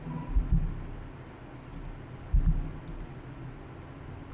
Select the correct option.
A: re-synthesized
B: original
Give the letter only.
B